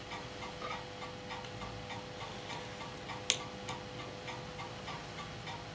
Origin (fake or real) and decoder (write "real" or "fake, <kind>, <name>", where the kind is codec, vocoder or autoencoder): real